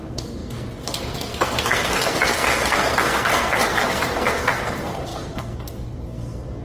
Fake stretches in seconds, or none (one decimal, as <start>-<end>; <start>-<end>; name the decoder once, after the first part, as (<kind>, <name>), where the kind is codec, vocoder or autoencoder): 0.0-6.6 (codec, SNAC)